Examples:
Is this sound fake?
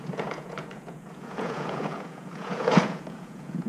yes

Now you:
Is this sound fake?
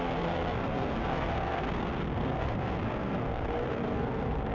yes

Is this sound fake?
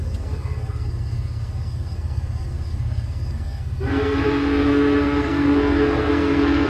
yes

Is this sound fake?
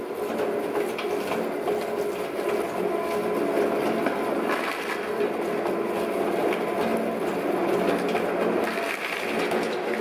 no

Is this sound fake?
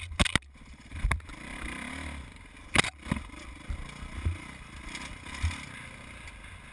no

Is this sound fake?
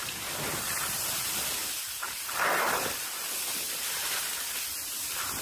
no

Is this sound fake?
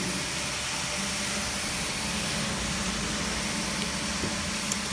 no